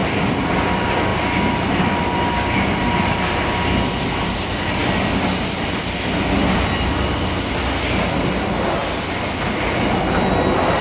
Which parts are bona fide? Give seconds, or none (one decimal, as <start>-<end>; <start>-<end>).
0.7-1.1; 3.5-10.8